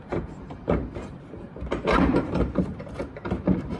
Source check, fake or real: fake